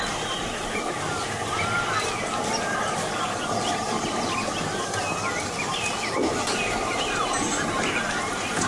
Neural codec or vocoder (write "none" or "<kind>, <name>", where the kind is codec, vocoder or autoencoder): none